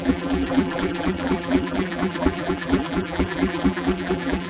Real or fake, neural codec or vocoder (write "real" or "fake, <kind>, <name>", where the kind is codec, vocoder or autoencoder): fake, vocoder, BigVGAN v2